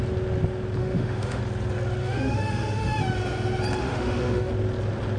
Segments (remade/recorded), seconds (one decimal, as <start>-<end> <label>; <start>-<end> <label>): 0.0-0.8 recorded; 0.8-1.4 remade; 1.4-2.0 recorded; 2.0-3.0 remade; 3.0-3.8 recorded; 3.8-4.5 remade; 4.5-5.2 recorded